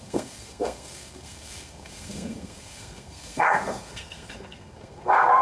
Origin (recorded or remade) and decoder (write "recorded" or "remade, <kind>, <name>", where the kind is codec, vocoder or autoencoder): remade, codec, SNAC